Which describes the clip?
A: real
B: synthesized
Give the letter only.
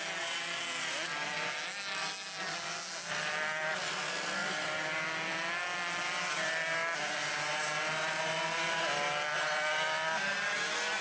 A